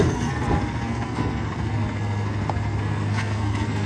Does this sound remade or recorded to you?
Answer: remade